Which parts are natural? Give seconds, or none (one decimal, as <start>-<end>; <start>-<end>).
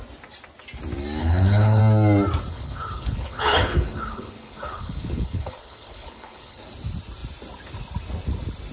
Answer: 0.0-1.2; 1.8-2.5; 6.6-8.7